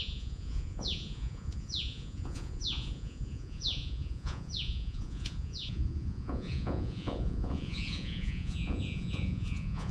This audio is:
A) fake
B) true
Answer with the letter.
A